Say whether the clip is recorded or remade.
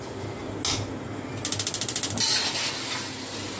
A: recorded